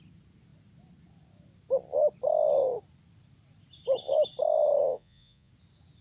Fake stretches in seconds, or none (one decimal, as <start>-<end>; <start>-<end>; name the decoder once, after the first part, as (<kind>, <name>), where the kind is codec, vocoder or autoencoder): 4.8-5.5 (vocoder, Vocos)